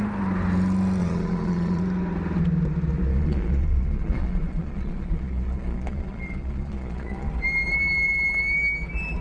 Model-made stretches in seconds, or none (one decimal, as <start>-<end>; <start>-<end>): 1.0-1.8; 3.1-7.3